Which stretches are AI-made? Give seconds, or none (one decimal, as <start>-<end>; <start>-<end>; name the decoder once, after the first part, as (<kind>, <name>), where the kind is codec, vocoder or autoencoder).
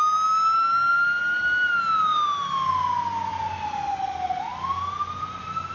none